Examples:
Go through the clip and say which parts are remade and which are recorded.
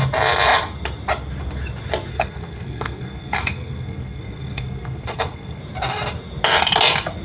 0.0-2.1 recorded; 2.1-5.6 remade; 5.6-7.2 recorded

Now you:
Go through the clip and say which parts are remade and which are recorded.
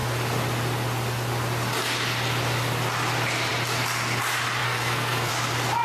0.0-4.6 recorded; 4.6-5.3 remade; 5.3-5.8 recorded